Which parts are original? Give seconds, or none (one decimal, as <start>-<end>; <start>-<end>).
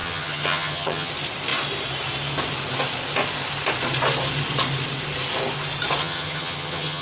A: 1.1-6.0